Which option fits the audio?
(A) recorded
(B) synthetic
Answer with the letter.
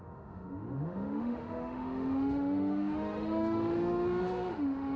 B